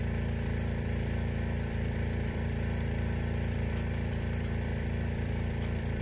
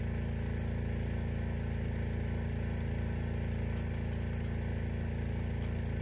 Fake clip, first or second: first